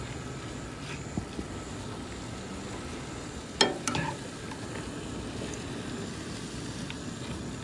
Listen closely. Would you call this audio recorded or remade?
recorded